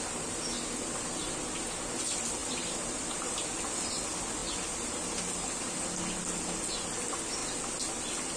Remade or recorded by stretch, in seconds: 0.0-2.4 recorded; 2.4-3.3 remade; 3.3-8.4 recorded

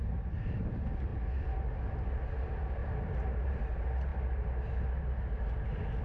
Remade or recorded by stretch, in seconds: 0.0-2.8 recorded; 2.8-3.5 remade; 3.5-6.0 recorded

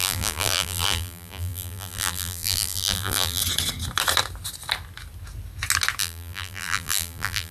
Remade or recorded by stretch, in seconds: 0.0-3.4 remade; 3.4-6.0 recorded; 6.0-7.5 remade

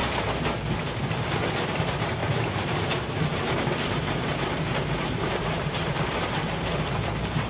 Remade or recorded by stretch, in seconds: 0.0-1.8 recorded; 1.8-7.5 remade